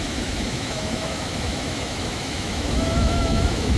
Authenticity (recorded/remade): remade